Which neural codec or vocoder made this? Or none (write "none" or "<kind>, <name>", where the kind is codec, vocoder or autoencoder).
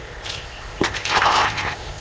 codec, ZipCodec